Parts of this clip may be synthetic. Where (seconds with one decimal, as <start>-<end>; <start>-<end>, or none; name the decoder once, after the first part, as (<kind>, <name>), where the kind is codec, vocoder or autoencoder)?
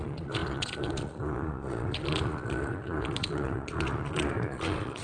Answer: 0.0-5.0 (vocoder, Vocos)